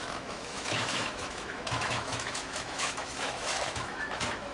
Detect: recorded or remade remade